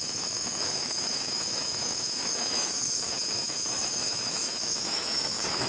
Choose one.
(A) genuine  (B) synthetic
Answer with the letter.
B